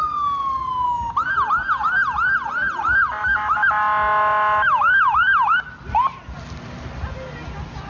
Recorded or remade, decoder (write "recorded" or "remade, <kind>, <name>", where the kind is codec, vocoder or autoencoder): recorded